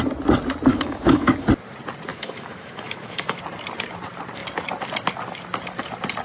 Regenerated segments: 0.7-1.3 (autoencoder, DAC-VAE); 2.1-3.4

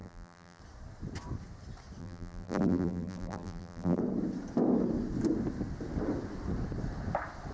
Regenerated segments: 0.0-0.6 (vocoder, BigVGAN v2); 2.0-4.0

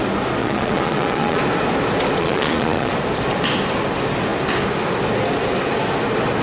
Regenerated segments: 0.4-1.4 (vocoder, Vocos); 2.2-2.9

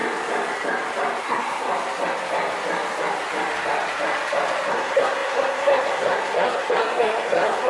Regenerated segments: 1.2-1.7 (codec, SNAC); 4.7-7.7

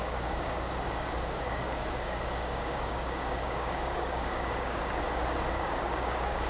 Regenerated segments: 0.0-4.8 (codec, DAC); 5.5-6.5

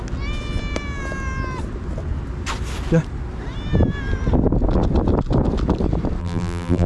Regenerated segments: 6.2-6.9 (vocoder, BigVGAN v2)

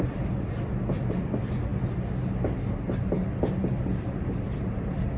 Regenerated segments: none